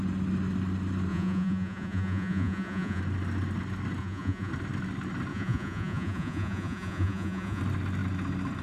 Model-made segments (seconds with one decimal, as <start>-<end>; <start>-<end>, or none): 1.1-3.0; 4.0-4.5; 5.3-7.6